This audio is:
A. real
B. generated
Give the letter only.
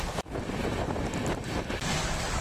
A